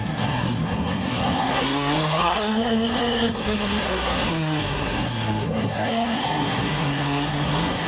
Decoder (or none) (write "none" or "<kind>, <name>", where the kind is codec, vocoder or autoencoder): codec, SNAC